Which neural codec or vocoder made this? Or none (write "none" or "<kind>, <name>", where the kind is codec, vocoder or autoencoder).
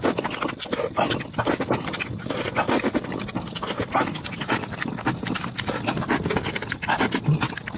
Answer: none